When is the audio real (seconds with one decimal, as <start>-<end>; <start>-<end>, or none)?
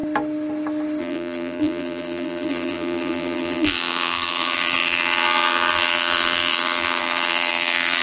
0.0-1.0